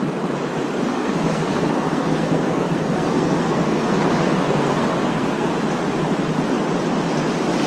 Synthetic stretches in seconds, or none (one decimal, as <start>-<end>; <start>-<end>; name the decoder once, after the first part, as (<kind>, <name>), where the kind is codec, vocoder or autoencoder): 0.9-5.5 (codec, SNAC)